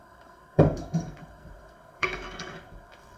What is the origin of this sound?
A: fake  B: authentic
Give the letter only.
A